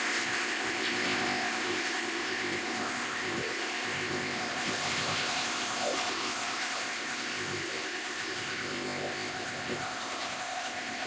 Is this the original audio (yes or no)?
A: no